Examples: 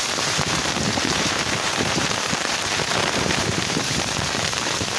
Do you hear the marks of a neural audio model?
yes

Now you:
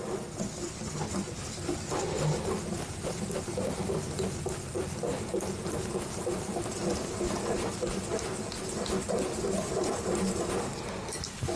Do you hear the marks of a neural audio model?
no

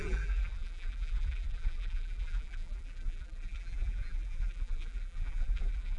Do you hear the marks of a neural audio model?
yes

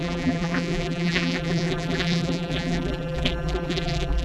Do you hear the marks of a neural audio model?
yes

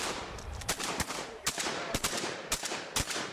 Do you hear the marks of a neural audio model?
yes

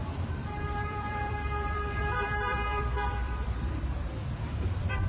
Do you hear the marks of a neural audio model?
yes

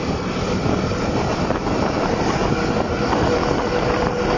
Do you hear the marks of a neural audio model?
no